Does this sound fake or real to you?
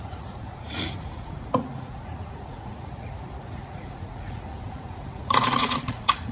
fake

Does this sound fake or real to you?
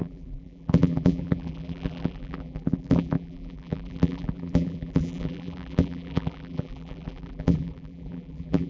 fake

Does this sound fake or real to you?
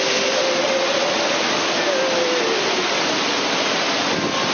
real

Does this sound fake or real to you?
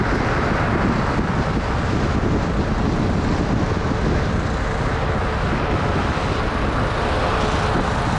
real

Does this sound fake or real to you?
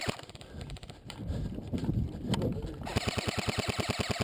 fake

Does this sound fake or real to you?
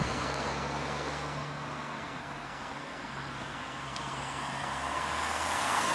fake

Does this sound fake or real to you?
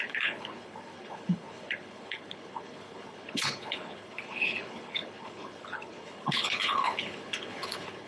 fake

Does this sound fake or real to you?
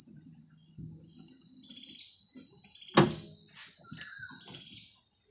real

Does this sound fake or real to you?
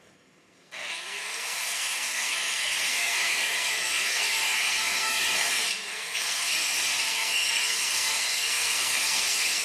fake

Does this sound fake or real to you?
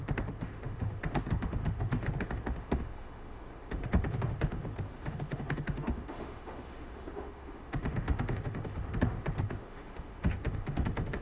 fake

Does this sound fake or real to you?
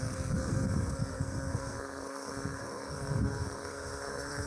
fake